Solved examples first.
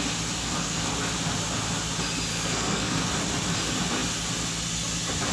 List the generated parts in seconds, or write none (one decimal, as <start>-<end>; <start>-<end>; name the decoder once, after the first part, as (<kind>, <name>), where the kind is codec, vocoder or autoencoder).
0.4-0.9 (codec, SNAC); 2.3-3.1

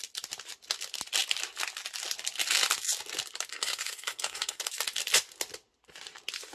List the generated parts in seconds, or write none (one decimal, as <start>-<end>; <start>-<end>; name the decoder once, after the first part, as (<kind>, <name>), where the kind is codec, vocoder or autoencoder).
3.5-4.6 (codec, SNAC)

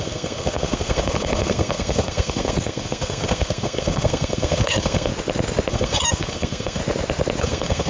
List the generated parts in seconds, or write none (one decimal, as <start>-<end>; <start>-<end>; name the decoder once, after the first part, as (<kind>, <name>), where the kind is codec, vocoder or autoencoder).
0.0-5.1 (codec, SNAC); 5.7-6.8; 7.4-7.9

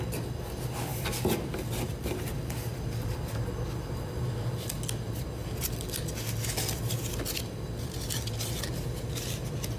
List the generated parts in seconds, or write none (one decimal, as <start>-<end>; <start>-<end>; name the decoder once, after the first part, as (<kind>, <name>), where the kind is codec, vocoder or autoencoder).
none

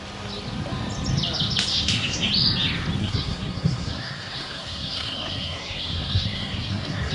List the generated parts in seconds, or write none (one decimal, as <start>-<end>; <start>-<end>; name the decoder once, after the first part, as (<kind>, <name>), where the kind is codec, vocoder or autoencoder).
1.7-2.3 (codec, SNAC); 3.0-7.1

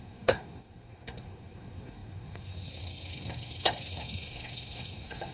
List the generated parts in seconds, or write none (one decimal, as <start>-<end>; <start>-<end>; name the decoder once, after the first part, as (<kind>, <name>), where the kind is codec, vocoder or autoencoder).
0.0-5.3 (codec, SNAC)